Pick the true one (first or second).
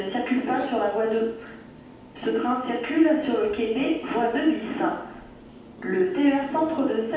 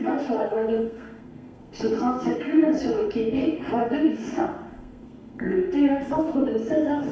first